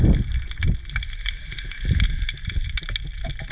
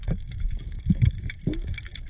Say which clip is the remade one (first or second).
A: second